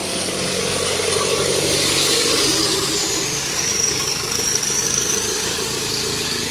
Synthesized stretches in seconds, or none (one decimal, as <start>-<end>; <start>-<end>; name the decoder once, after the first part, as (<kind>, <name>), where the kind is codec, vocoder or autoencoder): 0.0-6.5 (codec, DAC)